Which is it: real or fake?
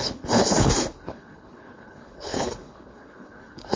fake